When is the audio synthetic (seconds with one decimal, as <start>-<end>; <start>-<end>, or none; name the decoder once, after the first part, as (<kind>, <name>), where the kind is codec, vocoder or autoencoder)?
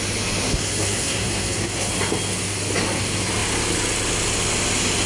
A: 0.5-1.9 (codec, SNAC)